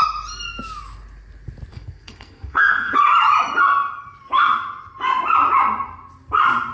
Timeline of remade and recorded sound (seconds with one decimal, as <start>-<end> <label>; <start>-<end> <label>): 0.0-1.7 recorded; 1.7-2.9 remade; 2.9-6.7 recorded